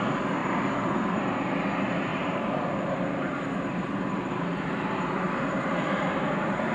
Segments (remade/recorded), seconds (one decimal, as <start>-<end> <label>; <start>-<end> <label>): 0.0-0.4 recorded; 0.4-1.2 remade; 1.2-2.1 recorded; 2.1-6.1 remade; 6.1-6.7 recorded